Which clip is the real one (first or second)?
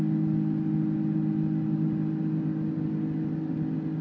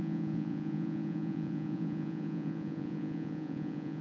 first